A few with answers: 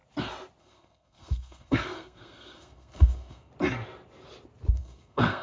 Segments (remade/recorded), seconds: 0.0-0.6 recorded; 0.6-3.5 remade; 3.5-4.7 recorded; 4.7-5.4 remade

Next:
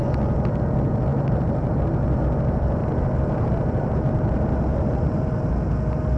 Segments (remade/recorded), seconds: 0.0-1.1 recorded; 1.1-1.8 remade; 1.8-2.8 recorded; 2.8-5.5 remade; 5.5-6.2 recorded

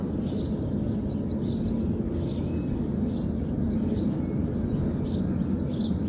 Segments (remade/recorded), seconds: 0.0-6.1 recorded

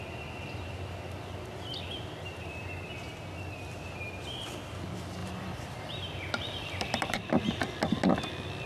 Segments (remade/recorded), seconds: 0.0-5.2 recorded; 5.2-7.4 remade; 7.4-8.7 recorded

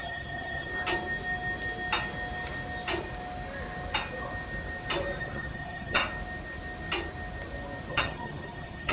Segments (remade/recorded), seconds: 0.0-0.7 remade; 0.7-5.2 recorded; 5.2-6.0 remade; 6.0-7.9 recorded; 7.9-8.9 remade

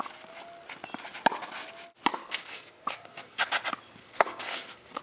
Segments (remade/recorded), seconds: 0.0-2.1 recorded; 2.1-3.4 remade; 3.4-4.0 recorded; 4.0-5.0 remade